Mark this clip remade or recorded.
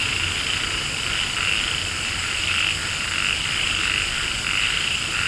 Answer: recorded